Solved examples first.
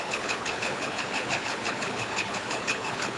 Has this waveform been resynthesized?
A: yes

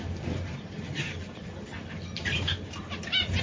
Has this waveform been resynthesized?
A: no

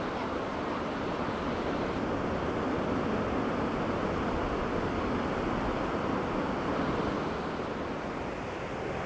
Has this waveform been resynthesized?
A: no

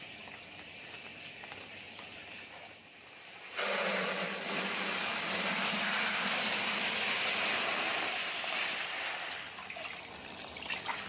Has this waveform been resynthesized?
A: no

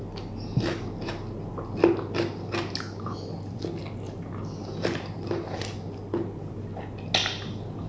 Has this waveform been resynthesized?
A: no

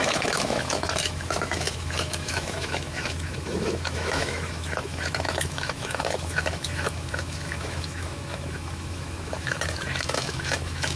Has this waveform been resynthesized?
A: yes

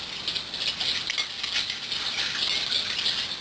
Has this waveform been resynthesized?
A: no